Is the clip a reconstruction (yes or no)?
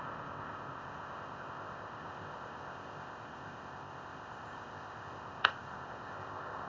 yes